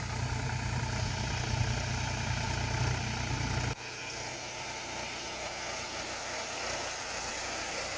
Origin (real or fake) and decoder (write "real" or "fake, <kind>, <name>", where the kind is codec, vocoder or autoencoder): real